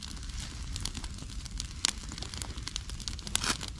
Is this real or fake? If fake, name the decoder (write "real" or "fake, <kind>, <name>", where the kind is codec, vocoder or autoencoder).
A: real